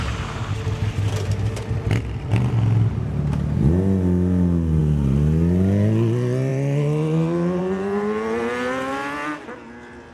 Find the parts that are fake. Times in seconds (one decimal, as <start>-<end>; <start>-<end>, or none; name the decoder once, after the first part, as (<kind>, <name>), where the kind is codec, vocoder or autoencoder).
none